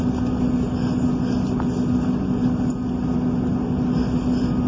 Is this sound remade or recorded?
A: recorded